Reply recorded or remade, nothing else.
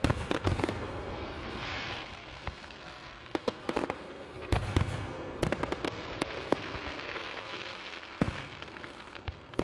remade